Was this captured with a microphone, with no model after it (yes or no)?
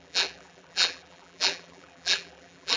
no